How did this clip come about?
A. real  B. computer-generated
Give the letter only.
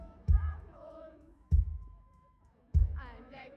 B